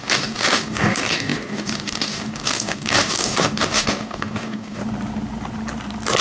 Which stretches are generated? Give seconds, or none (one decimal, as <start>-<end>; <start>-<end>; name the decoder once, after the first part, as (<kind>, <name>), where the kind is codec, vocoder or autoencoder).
0.0-4.8 (codec, DAC)